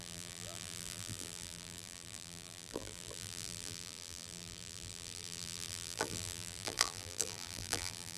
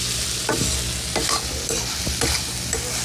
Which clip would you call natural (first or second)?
second